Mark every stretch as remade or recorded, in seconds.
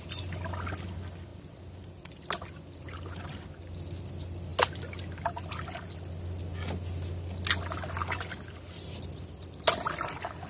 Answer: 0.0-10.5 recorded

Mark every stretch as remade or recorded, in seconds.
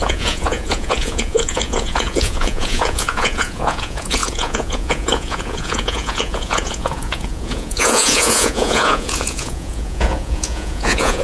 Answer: 0.0-11.2 remade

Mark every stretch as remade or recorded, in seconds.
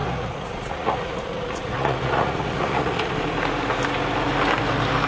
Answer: 0.0-3.1 remade; 3.1-5.1 recorded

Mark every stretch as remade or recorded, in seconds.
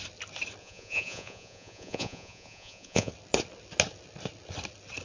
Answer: 0.0-0.6 recorded; 0.6-3.1 remade; 3.1-5.0 recorded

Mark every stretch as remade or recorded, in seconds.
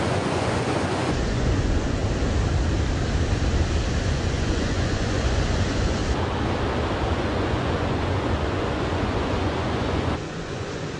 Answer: 0.0-2.0 remade; 2.0-4.0 recorded; 4.0-6.0 remade; 6.0-7.1 recorded; 7.1-11.0 remade